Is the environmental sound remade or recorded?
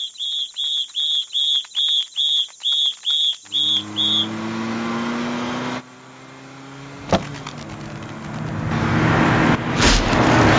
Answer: recorded